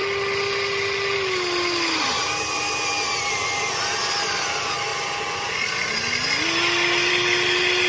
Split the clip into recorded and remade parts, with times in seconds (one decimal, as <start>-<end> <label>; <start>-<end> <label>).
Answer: 0.0-7.9 recorded